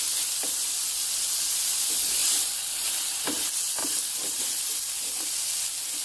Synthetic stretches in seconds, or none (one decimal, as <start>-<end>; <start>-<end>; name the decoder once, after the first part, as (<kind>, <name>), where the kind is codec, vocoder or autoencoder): 3.8-4.4 (vocoder, BigVGAN v2)